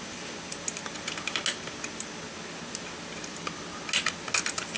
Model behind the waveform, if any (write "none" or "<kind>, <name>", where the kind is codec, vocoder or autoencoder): none